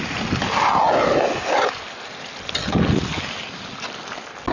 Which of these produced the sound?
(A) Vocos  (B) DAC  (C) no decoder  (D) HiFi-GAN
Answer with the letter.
C